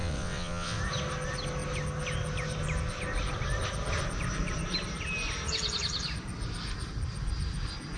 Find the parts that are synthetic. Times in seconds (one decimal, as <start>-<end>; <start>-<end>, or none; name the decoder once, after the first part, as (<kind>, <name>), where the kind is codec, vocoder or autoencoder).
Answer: 0.0-0.8 (vocoder, WaveNeXt)